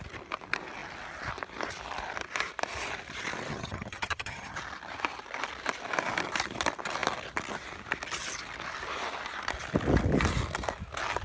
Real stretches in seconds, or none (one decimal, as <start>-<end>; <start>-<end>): 0.0-3.5; 4.6-11.2